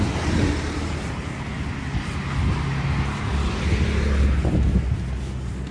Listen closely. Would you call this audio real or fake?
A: real